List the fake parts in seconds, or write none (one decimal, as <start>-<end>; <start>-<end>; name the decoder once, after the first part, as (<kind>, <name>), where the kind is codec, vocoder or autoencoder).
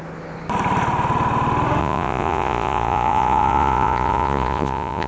1.8-5.1 (vocoder, Vocos)